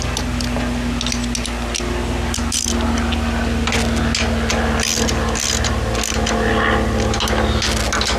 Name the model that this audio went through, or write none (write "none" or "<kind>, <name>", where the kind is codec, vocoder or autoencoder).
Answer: none